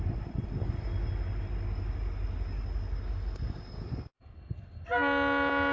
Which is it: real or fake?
real